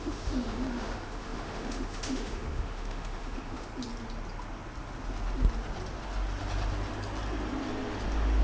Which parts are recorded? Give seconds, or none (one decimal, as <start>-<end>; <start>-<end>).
3.7-8.4